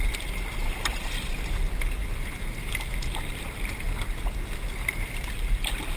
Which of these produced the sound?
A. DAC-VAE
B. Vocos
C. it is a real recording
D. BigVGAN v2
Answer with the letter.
D